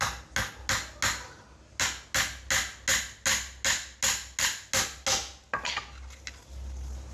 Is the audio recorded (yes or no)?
yes